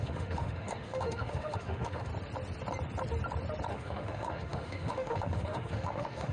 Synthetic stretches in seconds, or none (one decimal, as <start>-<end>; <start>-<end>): 0.0-2.1; 3.7-6.3